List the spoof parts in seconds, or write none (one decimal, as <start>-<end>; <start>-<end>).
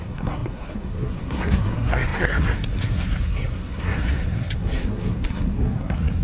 0.0-6.2